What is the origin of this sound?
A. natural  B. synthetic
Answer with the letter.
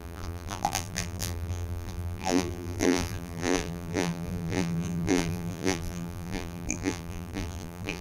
B